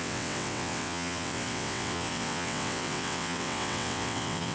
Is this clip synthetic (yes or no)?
yes